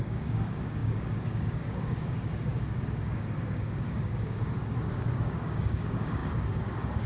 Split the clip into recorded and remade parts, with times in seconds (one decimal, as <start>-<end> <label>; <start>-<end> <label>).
0.0-7.1 remade